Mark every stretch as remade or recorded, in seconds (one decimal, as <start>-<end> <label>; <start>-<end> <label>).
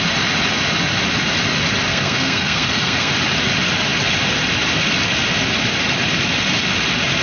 0.0-1.9 recorded; 1.9-3.1 remade; 3.1-7.2 recorded